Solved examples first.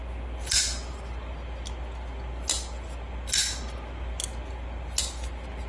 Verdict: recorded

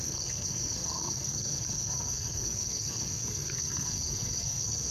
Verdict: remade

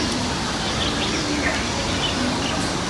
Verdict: recorded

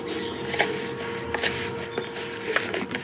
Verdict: recorded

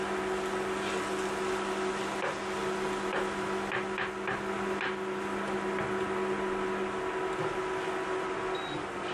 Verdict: recorded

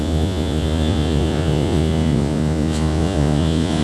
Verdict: remade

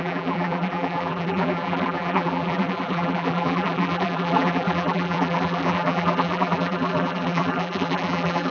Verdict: remade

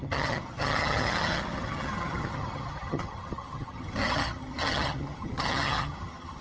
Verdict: remade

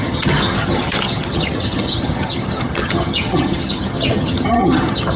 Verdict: remade